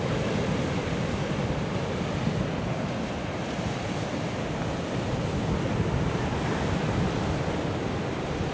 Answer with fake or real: real